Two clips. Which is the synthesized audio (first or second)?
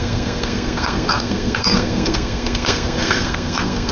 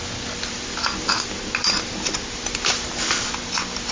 first